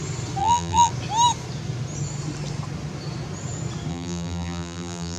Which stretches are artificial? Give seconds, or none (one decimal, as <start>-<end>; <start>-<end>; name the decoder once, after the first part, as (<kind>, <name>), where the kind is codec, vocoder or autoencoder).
0.4-0.9 (vocoder, BigVGAN v2); 3.9-5.2